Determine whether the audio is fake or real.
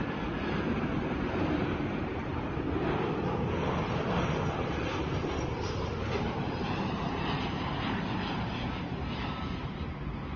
fake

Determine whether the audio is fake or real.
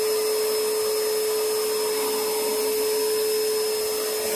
real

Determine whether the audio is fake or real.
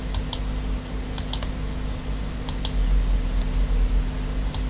real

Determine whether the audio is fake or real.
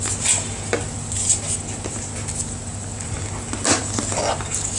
real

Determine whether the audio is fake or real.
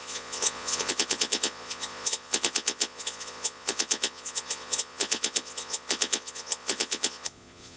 fake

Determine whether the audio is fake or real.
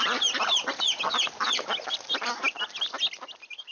real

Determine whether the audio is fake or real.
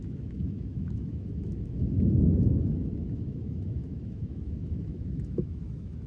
fake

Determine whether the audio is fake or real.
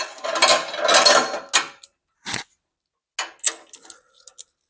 real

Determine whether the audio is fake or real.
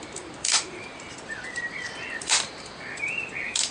fake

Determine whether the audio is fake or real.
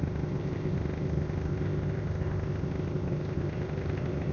fake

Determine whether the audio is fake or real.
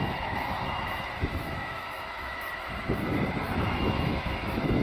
fake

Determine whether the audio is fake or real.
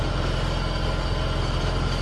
real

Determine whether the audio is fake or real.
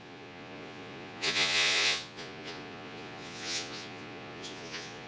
fake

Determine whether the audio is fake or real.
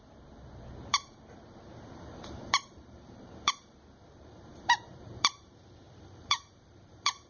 fake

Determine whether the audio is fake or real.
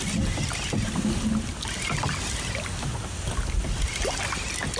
real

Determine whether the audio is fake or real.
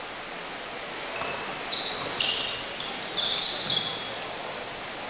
real